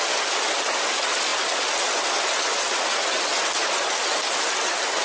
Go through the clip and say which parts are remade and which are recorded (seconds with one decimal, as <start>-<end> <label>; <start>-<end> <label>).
0.0-5.0 recorded